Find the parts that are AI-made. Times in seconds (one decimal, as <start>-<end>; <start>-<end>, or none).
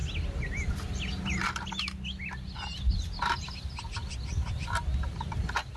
none